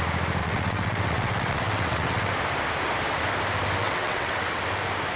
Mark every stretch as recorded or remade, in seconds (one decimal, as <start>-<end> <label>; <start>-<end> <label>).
0.0-0.4 recorded; 0.4-2.3 remade; 2.3-3.8 recorded; 3.8-4.6 remade; 4.6-5.2 recorded